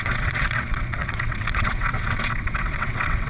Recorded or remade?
remade